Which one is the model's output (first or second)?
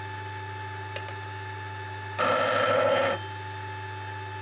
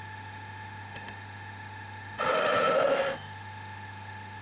second